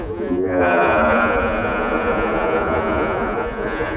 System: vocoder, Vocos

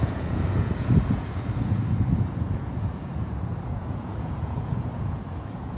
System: vocoder, Vocos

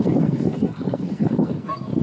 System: codec, SNAC